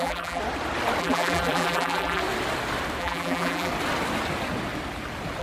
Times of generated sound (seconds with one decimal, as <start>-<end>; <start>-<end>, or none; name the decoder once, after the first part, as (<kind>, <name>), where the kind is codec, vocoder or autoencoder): 0.0-0.4 (vocoder, BigVGAN v2); 1.0-2.2; 3.0-3.7